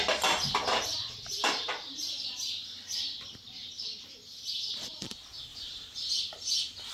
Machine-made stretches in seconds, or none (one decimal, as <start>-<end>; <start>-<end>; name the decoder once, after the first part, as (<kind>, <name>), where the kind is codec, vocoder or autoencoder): 0.7-2.8 (vocoder, BigVGAN v2); 5.5-6.1